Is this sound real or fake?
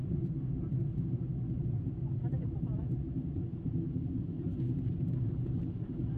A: real